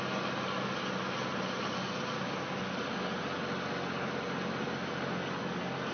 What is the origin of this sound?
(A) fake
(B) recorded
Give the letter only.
B